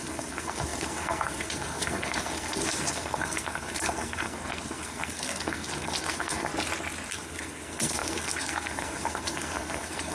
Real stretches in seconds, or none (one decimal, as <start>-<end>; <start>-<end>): 6.5-7.1